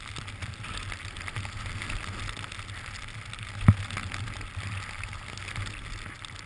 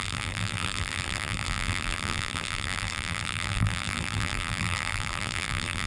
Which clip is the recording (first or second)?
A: first